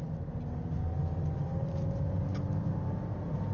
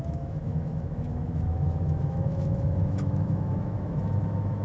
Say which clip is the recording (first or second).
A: first